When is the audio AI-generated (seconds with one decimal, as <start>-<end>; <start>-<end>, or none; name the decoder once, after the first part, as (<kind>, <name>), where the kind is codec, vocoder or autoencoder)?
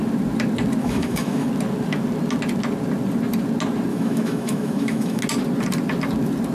0.8-1.5 (autoencoder, DAC-VAE); 3.9-5.2